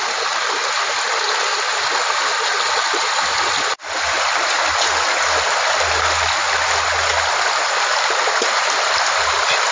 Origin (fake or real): real